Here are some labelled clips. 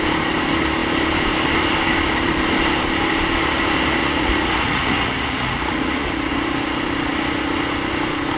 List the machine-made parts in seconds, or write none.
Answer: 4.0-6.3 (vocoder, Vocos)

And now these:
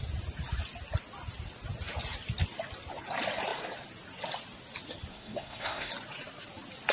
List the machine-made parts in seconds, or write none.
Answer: 5.1-5.9 (codec, SNAC)

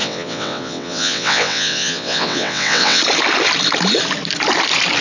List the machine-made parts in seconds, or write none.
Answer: 0.0-3.0 (vocoder, WaveNeXt)

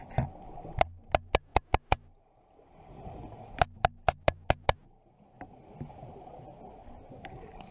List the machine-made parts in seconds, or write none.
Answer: none

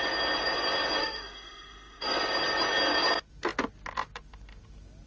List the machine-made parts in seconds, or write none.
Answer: 1.0-2.2 (autoencoder, DAC-VAE)